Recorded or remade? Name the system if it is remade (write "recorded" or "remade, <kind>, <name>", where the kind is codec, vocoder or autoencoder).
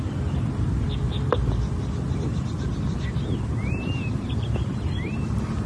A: remade, vocoder, BigVGAN v2